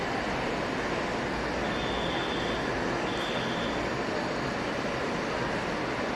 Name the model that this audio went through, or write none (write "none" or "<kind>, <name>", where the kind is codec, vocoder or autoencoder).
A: none